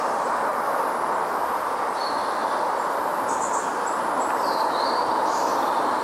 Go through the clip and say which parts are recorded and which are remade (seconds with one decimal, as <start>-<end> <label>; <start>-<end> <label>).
0.0-0.5 remade; 0.5-1.3 recorded; 1.3-3.7 remade; 3.7-4.4 recorded; 4.4-6.0 remade